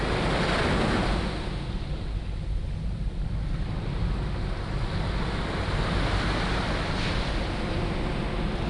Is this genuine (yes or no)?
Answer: yes